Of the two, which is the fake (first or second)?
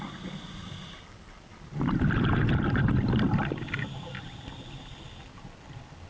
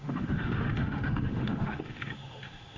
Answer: second